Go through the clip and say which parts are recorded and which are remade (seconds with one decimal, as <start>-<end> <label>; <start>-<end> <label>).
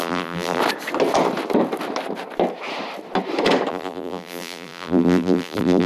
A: 0.0-0.6 remade; 0.6-3.7 recorded; 3.7-5.9 remade